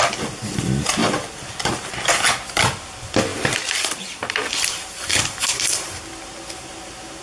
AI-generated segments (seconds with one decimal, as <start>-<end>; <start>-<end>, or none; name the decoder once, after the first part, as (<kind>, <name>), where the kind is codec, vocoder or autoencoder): none